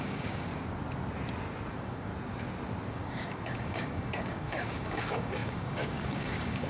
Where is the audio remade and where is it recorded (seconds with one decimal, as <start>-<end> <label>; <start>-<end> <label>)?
0.0-0.5 remade; 0.5-1.7 recorded; 1.7-2.1 remade; 2.1-2.9 recorded; 2.9-6.7 remade

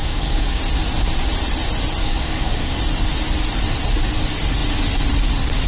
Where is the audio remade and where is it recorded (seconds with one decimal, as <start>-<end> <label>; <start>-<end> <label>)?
0.0-0.6 remade; 0.6-2.0 recorded; 2.0-2.8 remade; 2.8-5.7 recorded

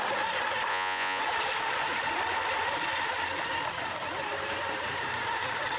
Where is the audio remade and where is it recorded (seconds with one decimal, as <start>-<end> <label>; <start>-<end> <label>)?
0.0-0.7 recorded; 0.7-1.2 remade; 1.2-5.8 recorded

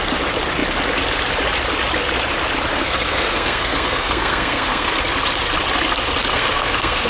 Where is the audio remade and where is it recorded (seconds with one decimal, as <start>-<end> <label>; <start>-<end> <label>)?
0.0-2.7 recorded; 2.7-4.9 remade; 4.9-6.3 recorded; 6.3-7.1 remade